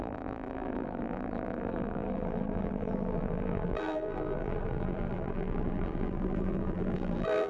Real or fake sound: fake